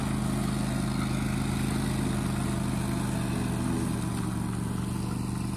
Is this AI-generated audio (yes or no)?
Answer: no